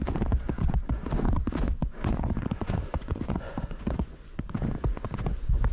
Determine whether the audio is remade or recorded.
remade